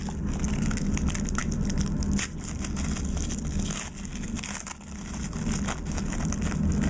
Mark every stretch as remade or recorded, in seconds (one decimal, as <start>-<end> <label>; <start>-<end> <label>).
0.0-6.9 recorded